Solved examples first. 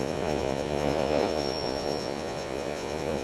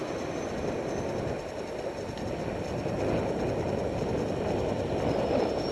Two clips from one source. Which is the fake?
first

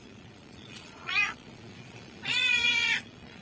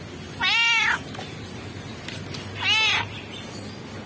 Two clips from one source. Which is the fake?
first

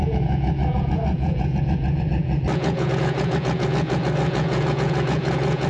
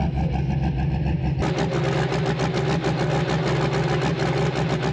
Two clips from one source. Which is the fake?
first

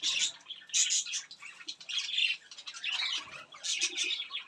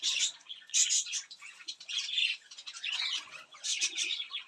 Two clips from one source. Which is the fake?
second